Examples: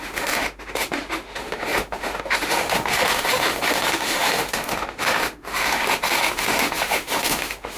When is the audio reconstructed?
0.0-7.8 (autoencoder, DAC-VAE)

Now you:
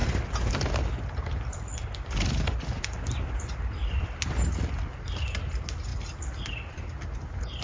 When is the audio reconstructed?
none